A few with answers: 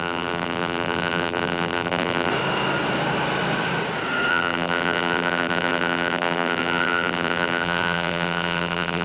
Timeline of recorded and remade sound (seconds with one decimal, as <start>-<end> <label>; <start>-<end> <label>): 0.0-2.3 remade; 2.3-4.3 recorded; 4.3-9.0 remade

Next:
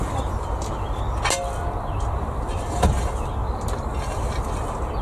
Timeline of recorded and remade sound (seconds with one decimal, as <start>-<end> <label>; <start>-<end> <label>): 0.0-5.0 recorded

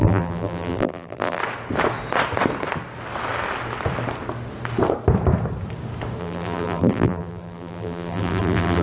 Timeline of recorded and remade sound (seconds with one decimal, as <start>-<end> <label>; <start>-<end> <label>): 0.0-1.4 remade; 1.4-6.2 recorded; 6.2-8.8 remade

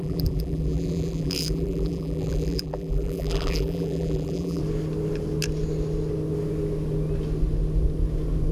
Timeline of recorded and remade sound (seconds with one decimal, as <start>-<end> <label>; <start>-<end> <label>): 0.0-4.6 remade; 4.6-8.5 recorded